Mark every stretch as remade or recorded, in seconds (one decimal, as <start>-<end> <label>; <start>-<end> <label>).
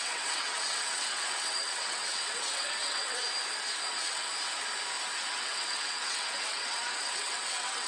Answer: 0.0-3.2 remade; 3.2-3.9 recorded; 3.9-4.3 remade; 4.3-5.3 recorded; 5.3-7.9 remade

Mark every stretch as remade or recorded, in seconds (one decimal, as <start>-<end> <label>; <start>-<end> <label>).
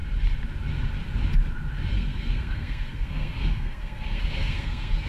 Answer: 0.0-1.9 recorded; 1.9-5.1 remade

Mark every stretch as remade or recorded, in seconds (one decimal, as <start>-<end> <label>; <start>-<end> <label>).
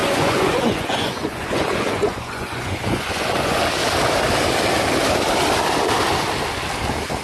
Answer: 0.0-3.6 remade; 3.6-7.2 recorded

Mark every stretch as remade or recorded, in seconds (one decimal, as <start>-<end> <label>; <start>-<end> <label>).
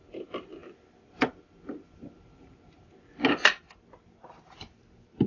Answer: 0.0-5.3 recorded